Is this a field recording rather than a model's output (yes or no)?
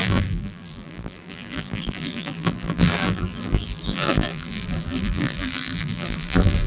no